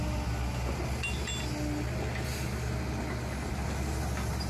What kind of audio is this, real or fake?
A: real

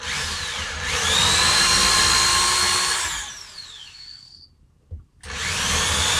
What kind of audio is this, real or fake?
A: real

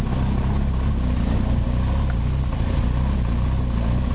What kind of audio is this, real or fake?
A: real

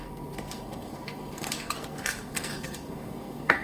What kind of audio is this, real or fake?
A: fake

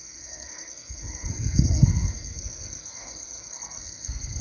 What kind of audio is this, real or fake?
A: fake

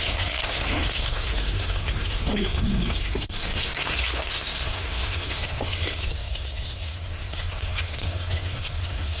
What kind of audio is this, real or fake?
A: fake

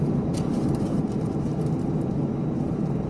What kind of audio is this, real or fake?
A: fake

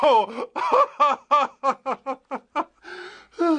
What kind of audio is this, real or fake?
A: real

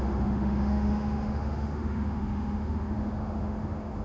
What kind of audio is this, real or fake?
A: fake